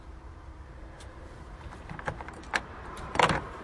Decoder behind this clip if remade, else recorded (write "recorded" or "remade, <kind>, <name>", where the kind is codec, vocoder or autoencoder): remade, vocoder, BigVGAN v2